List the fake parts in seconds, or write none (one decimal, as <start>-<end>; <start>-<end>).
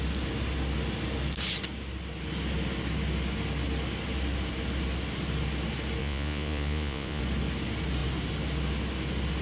6.0-7.2